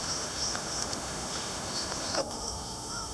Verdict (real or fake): fake